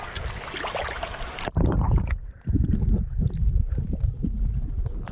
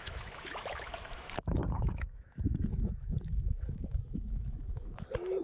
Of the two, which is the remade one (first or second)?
second